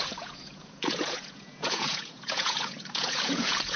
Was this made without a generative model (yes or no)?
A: no